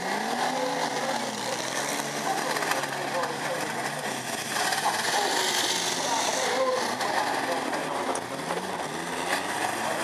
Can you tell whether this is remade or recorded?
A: recorded